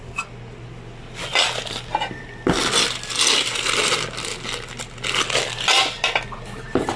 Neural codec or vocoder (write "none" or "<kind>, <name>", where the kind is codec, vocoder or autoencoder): none